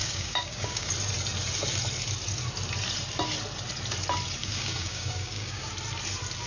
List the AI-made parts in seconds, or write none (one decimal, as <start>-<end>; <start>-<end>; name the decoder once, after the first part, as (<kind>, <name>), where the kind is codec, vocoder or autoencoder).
0.0-0.9 (codec, DAC); 4.4-5.7